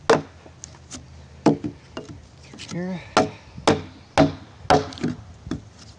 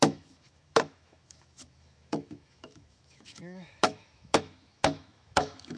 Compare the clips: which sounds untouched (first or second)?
first